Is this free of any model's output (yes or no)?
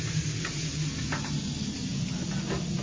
yes